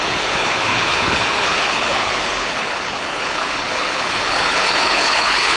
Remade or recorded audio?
remade